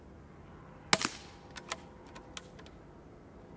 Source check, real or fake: real